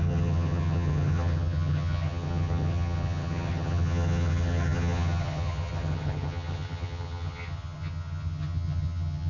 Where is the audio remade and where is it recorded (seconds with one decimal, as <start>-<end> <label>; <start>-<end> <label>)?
0.0-9.3 remade